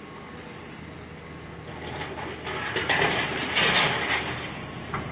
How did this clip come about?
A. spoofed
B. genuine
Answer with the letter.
B